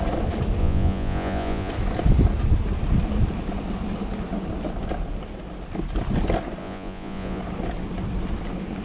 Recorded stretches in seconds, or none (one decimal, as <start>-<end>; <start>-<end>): 0.0-0.6; 1.7-6.6; 7.4-8.8